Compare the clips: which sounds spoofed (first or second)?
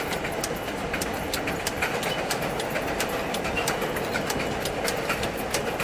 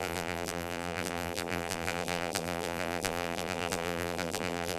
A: second